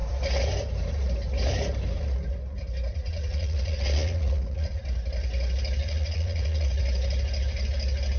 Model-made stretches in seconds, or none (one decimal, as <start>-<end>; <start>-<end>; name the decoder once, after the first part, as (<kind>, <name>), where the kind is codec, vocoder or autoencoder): 2.9-4.8 (vocoder, Vocos); 5.8-6.8